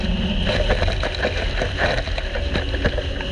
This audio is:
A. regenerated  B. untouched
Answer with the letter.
B